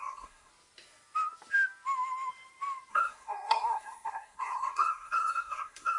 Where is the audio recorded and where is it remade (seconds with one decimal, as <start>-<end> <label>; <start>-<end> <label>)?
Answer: 0.0-0.5 remade; 0.5-2.9 recorded; 2.9-6.0 remade